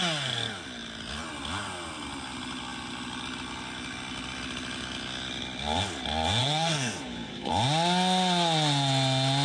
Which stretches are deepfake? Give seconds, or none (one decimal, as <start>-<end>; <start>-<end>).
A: 6.4-7.5